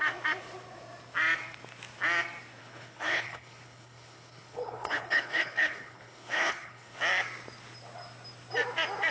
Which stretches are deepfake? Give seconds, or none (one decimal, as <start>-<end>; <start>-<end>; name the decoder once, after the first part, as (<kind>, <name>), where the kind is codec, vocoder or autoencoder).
2.6-7.0 (codec, HILCodec)